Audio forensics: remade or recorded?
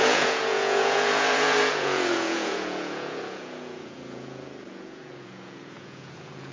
remade